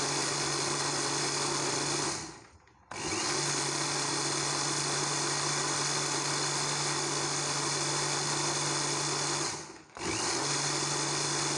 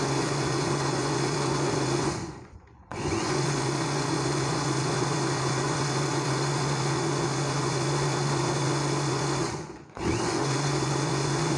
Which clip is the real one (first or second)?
first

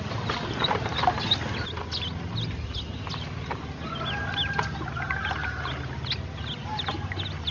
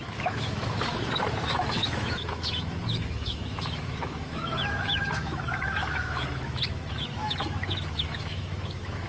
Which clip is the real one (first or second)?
first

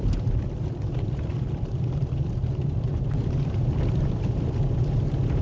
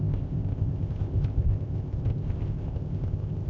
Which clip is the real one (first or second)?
first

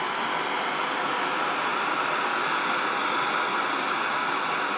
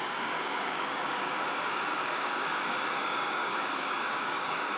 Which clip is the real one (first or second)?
first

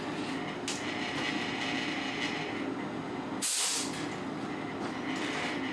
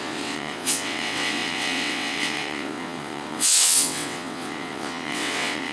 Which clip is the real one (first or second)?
first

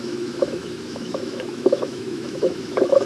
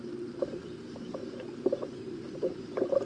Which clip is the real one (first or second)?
second